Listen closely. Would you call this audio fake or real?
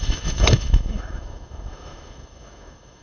fake